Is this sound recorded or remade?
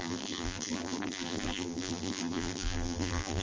remade